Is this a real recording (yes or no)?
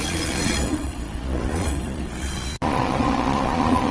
no